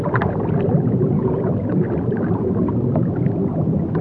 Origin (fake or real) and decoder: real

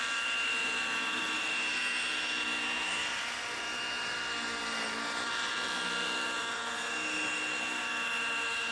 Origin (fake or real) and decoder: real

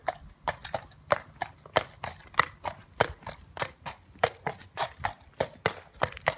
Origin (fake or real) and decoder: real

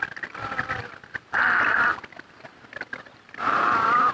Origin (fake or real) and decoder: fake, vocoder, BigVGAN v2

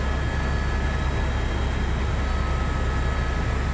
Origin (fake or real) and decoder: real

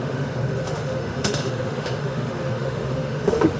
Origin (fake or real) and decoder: fake, autoencoder, DAC-VAE